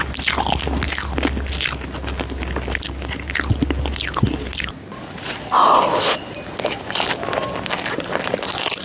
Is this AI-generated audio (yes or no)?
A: no